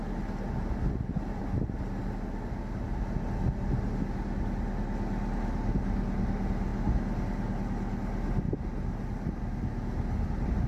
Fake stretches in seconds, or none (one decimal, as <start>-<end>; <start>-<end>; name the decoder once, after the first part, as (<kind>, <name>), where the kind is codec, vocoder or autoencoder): none